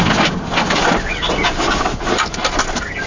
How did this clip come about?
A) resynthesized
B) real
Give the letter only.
B